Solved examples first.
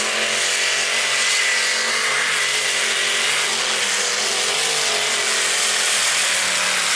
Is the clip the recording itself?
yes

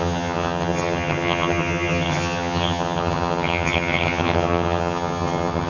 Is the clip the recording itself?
no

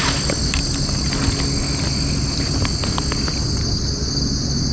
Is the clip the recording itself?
yes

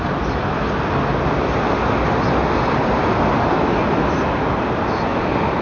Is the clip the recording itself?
yes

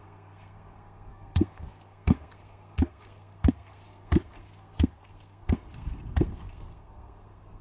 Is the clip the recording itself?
no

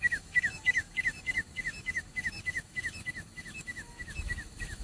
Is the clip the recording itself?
no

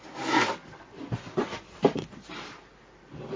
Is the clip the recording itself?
yes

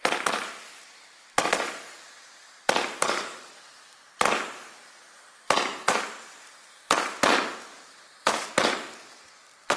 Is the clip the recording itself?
yes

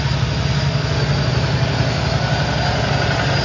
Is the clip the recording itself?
yes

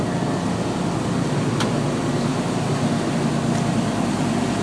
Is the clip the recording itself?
yes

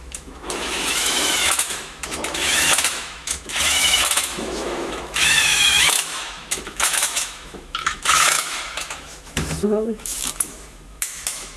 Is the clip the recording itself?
no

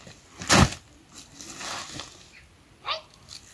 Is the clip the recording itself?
yes